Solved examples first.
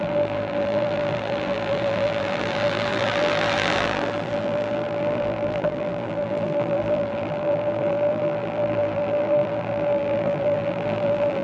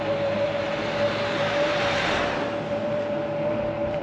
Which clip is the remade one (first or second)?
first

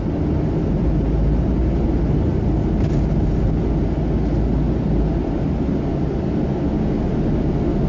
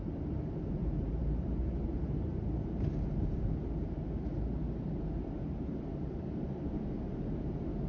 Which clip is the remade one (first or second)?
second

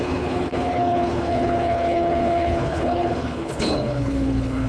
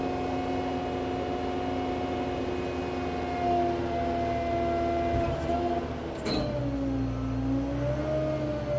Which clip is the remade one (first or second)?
first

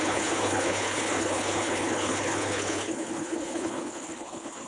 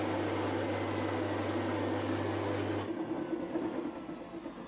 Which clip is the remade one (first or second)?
first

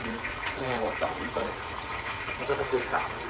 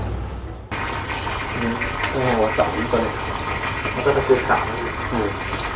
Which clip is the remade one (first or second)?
first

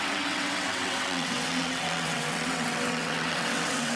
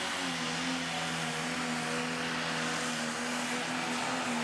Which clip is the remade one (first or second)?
first